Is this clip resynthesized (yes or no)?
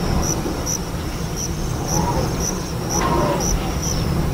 yes